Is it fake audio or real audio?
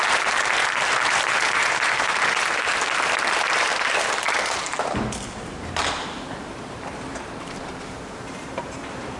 fake